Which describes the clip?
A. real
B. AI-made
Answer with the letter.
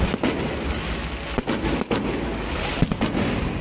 A